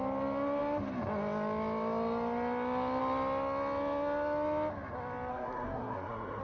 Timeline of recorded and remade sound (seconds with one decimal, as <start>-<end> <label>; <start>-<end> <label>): 0.0-5.3 recorded; 5.3-6.4 remade